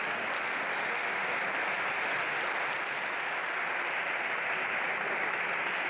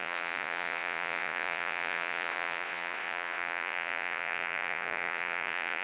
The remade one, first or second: second